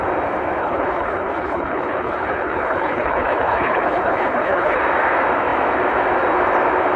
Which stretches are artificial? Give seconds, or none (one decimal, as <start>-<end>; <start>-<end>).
0.6-4.8